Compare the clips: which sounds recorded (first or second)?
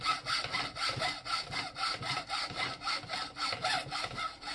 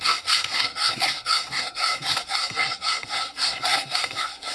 first